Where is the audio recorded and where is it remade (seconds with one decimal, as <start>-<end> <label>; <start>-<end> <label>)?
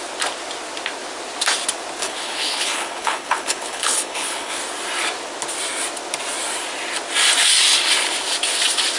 0.0-2.0 recorded; 2.0-4.6 remade; 4.6-9.0 recorded